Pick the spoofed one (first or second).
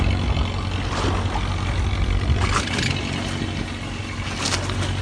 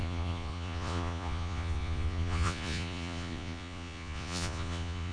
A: second